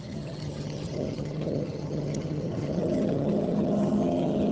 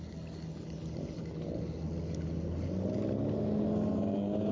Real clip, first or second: second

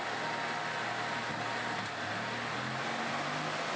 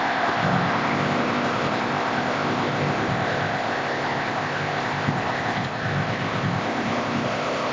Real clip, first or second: first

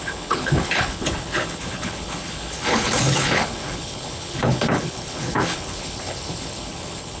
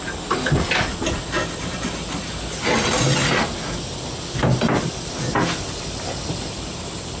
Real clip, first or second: second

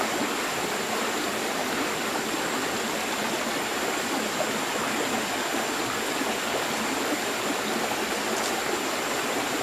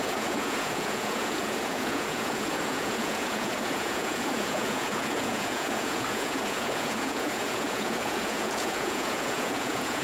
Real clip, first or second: first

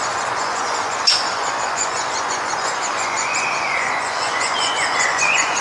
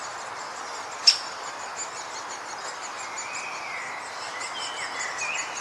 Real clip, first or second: second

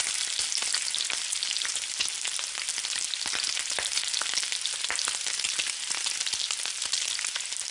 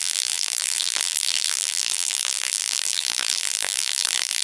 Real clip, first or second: first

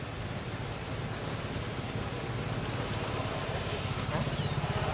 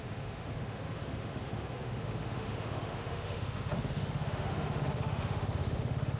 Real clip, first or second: first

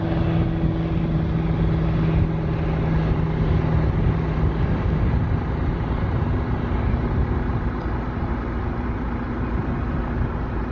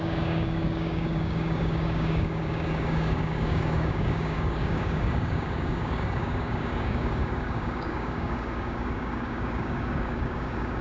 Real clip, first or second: first